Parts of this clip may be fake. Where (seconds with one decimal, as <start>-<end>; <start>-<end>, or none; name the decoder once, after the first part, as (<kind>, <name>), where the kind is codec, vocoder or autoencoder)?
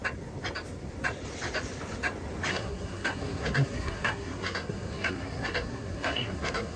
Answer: 2.5-6.8 (codec, SNAC)